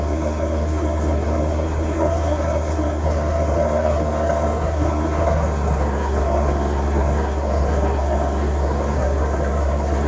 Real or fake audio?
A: fake